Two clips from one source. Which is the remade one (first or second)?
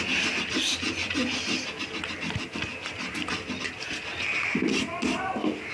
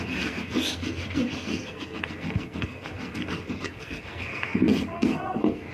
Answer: second